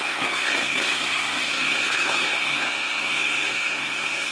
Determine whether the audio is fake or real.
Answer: fake